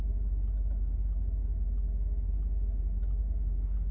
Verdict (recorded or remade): recorded